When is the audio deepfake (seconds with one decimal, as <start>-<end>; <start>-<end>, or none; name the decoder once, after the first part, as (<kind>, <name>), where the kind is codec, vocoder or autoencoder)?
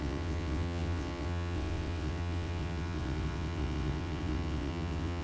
0.0-5.2 (vocoder, WaveNeXt)